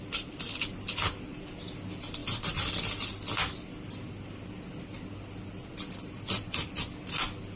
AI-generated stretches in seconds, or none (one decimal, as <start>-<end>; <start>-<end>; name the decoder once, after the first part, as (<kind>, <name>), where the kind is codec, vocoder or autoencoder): none